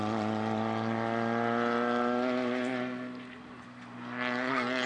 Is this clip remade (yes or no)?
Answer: no